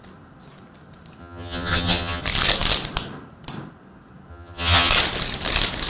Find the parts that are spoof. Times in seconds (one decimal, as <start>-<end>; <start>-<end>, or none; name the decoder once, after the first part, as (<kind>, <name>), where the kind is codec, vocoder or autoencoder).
1.2-2.2 (vocoder, HiFi-GAN); 4.3-4.9